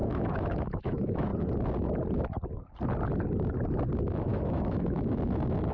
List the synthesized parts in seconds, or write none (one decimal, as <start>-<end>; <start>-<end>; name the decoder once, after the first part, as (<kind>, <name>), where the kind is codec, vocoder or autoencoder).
0.0-1.3 (autoencoder, DAC-VAE); 4.2-5.7